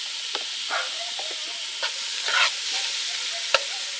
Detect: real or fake real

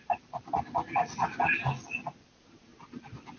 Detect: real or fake real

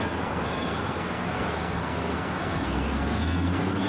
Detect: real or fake fake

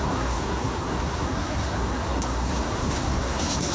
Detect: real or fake fake